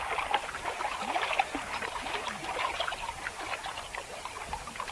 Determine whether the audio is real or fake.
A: real